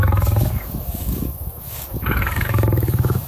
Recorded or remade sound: remade